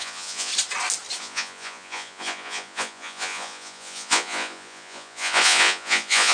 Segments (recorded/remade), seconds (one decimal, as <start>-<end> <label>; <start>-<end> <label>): 0.0-0.5 remade; 0.5-1.2 recorded; 1.2-6.3 remade